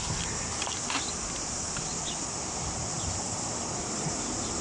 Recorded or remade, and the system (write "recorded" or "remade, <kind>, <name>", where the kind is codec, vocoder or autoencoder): recorded